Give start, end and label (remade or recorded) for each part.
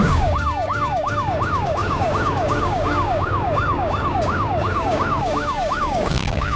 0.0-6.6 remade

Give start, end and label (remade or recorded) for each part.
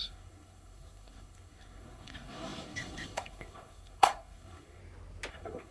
0.0-4.8 remade; 4.8-5.3 recorded; 5.3-5.7 remade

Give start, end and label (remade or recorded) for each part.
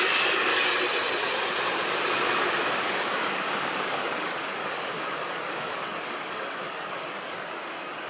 0.0-0.5 remade; 0.5-2.8 recorded; 2.8-8.1 remade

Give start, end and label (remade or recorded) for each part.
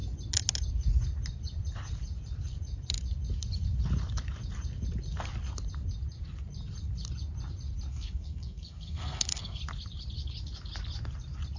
0.0-7.9 recorded; 7.9-9.6 remade; 9.6-11.6 recorded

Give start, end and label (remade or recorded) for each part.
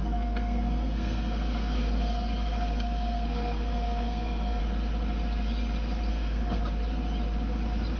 0.0-4.6 remade; 4.6-6.1 recorded; 6.1-6.6 remade; 6.6-8.0 recorded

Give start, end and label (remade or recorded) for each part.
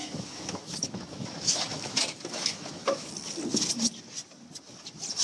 0.0-3.1 remade; 3.1-5.2 recorded